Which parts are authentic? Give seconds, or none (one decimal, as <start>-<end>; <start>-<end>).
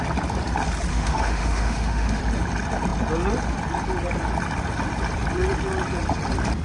0.0-0.9; 2.2-6.6